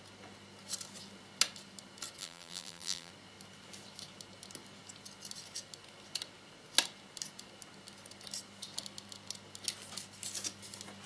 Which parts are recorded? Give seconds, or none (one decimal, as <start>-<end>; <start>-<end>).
0.0-2.2; 3.1-11.1